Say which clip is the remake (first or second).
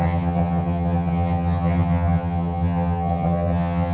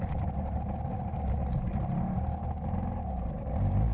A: first